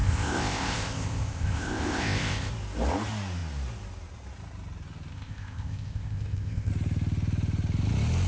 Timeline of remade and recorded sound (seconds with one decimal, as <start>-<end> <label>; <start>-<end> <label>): 0.0-2.5 remade; 2.5-5.1 recorded; 5.1-6.7 remade; 6.7-8.3 recorded